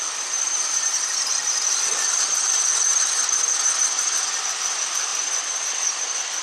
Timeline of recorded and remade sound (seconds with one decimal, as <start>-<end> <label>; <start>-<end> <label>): 0.0-6.4 recorded